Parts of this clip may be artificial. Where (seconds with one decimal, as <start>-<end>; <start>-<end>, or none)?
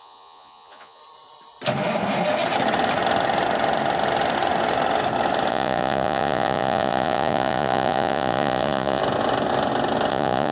0.0-1.0; 5.5-9.0; 10.1-10.5